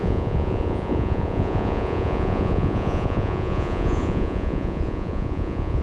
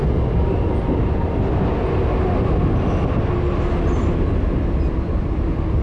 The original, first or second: second